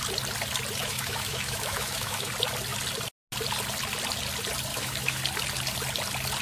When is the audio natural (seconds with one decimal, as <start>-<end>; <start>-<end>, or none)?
0.0-0.8; 2.3-4.7; 5.2-6.4

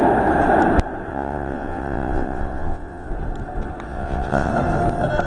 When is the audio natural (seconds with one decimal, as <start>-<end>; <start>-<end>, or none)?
0.0-1.1; 3.1-3.9; 4.5-5.3

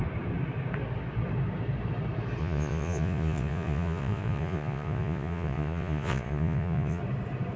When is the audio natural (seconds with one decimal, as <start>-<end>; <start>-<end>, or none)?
0.0-2.4; 7.0-7.6

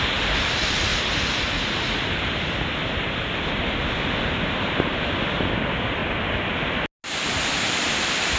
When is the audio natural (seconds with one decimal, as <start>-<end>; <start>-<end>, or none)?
0.9-4.5; 6.0-7.5

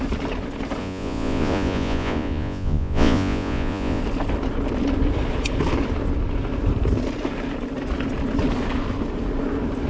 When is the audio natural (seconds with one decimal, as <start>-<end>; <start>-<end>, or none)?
0.0-0.8; 4.0-9.9

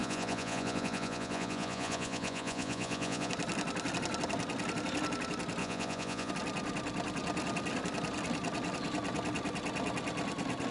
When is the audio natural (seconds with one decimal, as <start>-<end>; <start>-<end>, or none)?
3.3-5.6; 6.3-10.7

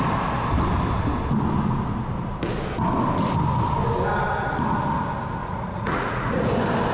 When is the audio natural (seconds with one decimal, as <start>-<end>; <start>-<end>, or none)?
0.0-5.4; 6.5-6.9